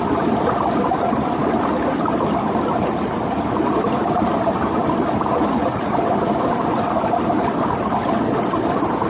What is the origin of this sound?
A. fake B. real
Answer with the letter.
B